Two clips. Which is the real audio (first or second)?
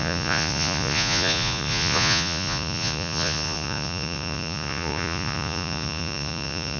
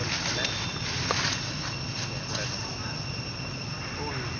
second